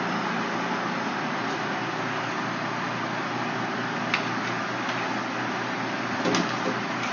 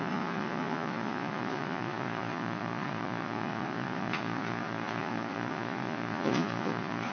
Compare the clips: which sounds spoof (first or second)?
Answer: second